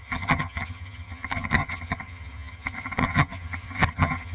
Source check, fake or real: fake